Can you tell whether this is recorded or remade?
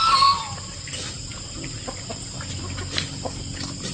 recorded